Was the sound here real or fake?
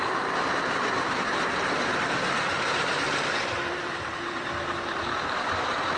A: fake